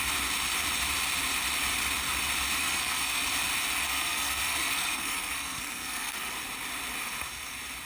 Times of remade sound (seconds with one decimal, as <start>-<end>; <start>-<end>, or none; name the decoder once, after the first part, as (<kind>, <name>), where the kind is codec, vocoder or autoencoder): 2.6-3.2 (codec, SNAC); 3.8-6.3